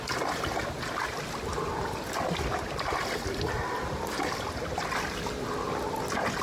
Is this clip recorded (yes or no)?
yes